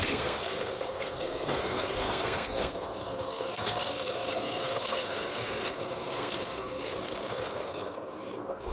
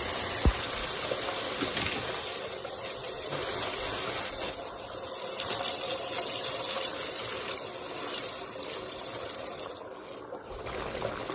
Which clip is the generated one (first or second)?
first